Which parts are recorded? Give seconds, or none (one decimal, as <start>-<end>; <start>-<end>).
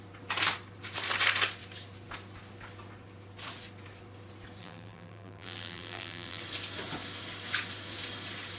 0.0-4.6; 6.4-8.6